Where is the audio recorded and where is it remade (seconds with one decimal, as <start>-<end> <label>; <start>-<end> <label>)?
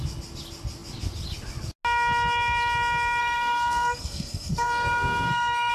0.0-3.2 recorded; 3.2-5.7 remade